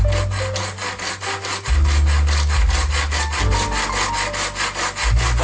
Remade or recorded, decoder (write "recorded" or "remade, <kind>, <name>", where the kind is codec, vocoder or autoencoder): recorded